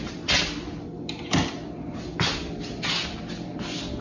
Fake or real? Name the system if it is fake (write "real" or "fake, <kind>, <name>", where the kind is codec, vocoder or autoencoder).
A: real